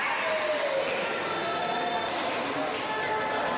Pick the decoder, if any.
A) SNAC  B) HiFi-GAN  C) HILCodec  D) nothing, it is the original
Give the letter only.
D